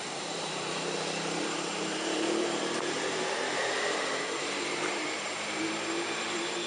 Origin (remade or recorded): remade